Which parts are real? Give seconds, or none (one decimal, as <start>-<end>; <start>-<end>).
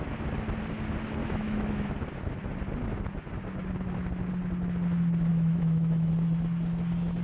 0.0-1.2; 1.9-5.3; 6.1-7.2